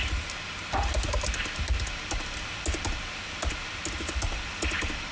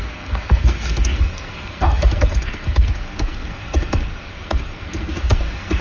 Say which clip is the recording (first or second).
first